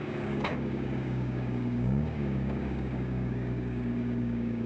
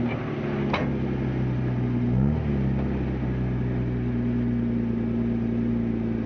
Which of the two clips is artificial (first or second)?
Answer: first